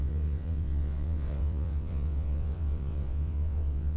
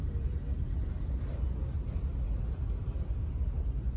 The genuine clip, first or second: second